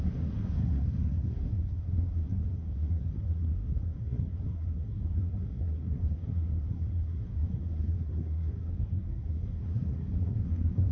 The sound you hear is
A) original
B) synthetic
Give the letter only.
B